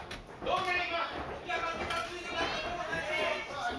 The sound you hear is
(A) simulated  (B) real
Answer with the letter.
B